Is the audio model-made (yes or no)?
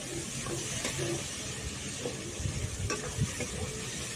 no